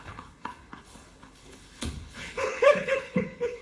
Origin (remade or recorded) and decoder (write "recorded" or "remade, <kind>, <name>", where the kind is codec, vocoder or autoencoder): remade, codec, HILCodec